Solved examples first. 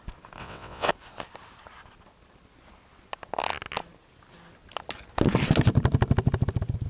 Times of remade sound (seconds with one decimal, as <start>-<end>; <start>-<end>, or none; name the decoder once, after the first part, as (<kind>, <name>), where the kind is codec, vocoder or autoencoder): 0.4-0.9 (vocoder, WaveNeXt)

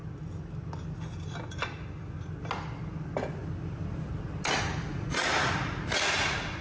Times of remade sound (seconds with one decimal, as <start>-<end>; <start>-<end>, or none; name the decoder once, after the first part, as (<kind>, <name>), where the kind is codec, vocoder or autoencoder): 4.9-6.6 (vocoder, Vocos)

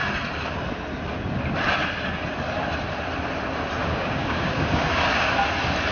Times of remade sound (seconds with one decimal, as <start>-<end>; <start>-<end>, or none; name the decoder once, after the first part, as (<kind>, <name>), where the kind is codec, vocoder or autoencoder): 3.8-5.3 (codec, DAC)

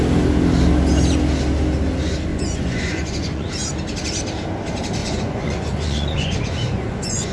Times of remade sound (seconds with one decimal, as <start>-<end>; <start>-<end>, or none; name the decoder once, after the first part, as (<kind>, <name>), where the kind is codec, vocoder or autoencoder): 2.3-3.5 (vocoder, Vocos); 5.0-7.3

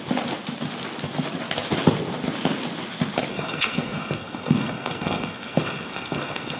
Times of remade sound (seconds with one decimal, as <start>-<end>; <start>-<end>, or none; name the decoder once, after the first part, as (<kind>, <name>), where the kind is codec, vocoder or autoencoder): 3.3-6.6 (codec, SNAC)

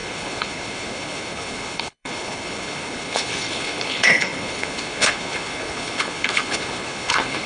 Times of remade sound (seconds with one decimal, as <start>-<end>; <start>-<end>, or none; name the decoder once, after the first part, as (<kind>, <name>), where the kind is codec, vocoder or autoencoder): 0.0-7.5 (codec, HILCodec)